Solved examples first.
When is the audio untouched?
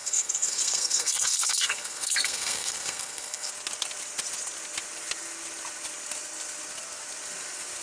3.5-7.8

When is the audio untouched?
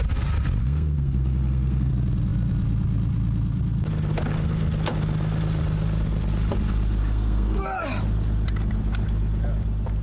0.0-0.6; 1.9-7.0; 7.6-10.0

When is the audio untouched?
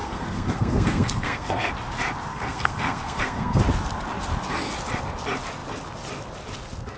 1.7-2.3; 3.6-7.0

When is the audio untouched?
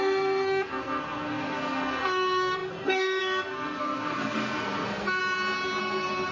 5.2-5.8